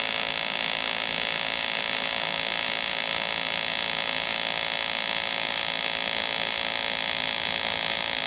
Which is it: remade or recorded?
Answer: recorded